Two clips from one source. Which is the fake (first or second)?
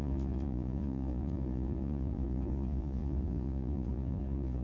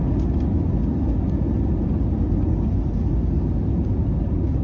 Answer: first